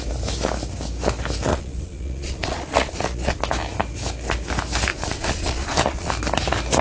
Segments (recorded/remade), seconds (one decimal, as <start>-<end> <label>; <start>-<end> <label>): 0.0-1.5 recorded; 1.5-3.4 remade; 3.4-4.9 recorded; 4.9-6.1 remade; 6.1-6.8 recorded